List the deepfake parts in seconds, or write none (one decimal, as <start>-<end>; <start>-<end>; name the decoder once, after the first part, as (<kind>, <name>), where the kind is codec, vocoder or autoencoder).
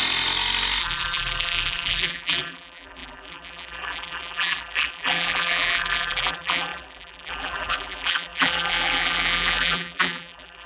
0.8-10.7 (vocoder, BigVGAN v2)